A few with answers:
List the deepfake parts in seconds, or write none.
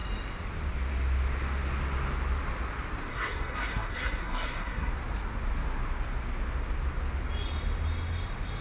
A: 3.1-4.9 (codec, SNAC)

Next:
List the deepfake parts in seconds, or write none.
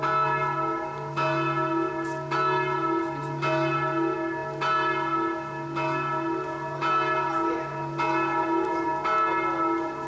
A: none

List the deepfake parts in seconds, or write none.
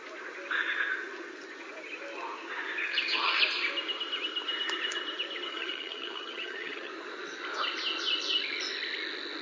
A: 2.8-3.4 (vocoder, HiFi-GAN); 5.5-6.9